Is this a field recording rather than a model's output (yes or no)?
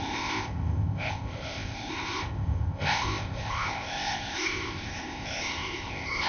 no